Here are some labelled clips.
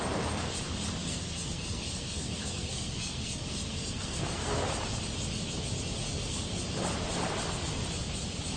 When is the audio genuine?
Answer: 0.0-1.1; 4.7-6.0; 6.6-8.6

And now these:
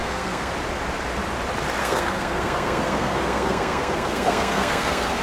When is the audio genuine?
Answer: 0.5-1.8

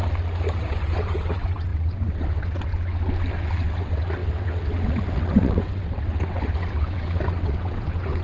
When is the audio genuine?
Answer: 0.0-0.5; 2.7-3.3

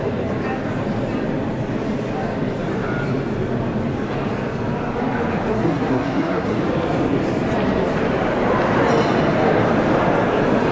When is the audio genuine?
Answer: 0.0-5.5; 6.6-10.7

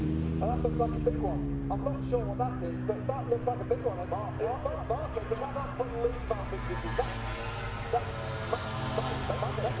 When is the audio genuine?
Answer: 0.0-9.8

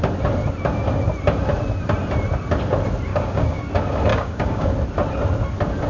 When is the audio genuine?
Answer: 0.0-3.1; 3.6-4.1; 4.7-5.9

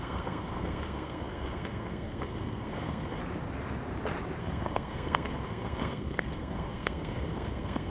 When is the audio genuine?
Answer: 3.2-4.4

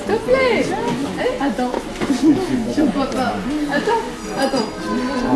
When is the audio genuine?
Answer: 0.0-4.2; 4.8-5.4